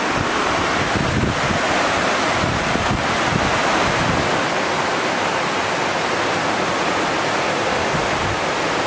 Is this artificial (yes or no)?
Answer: no